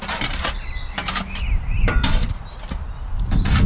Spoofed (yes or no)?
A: no